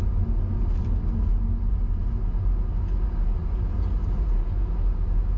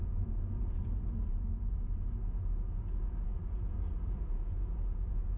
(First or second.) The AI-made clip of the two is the second